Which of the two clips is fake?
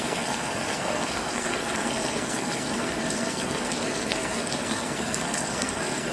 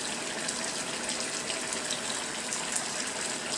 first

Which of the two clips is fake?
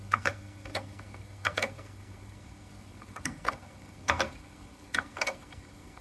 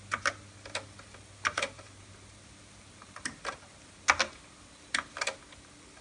first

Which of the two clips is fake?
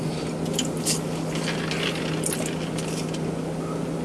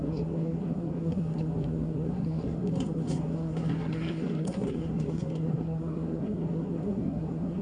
second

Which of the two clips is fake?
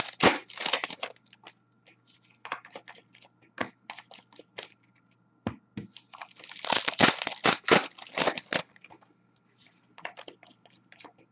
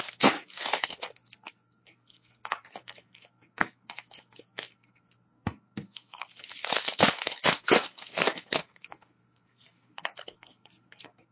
second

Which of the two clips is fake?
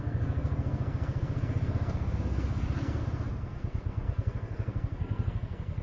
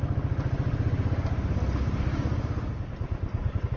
first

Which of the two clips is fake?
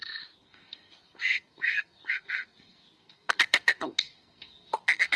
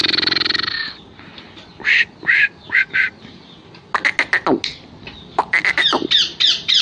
first